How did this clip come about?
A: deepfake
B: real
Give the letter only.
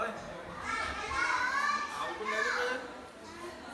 A